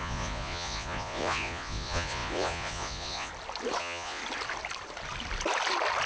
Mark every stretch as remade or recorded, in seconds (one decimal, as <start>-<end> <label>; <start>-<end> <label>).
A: 0.0-3.3 remade; 3.3-3.8 recorded; 3.8-4.2 remade; 4.2-6.1 recorded